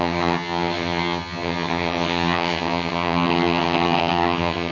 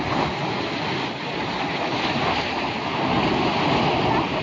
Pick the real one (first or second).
second